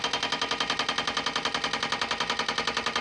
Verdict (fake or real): real